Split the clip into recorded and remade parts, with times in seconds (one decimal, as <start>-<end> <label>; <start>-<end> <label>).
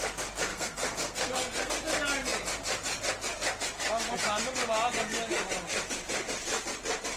0.0-0.5 recorded; 0.5-1.7 remade; 1.7-7.2 recorded